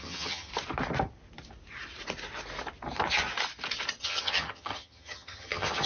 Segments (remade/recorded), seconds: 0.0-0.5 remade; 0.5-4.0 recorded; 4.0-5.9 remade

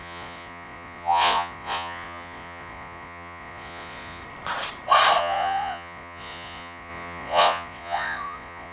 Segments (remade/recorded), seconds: 0.0-4.2 remade; 4.2-5.2 recorded; 5.2-8.7 remade

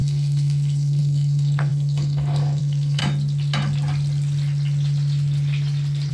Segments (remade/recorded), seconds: 0.0-3.0 remade; 3.0-6.1 recorded